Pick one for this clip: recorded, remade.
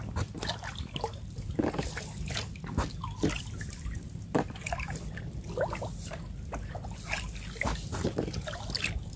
recorded